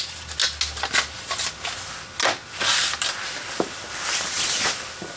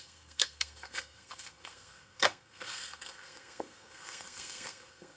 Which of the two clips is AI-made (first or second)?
second